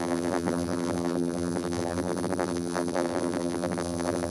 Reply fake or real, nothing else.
fake